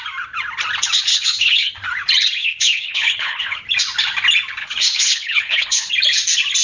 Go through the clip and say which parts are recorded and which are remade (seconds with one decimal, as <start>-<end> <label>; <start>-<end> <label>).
0.0-1.1 recorded; 1.1-1.7 remade; 1.7-2.4 recorded; 2.4-3.6 remade; 3.6-4.6 recorded; 4.6-5.9 remade; 5.9-6.6 recorded